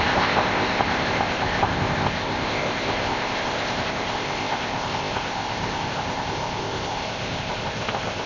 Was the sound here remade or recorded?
remade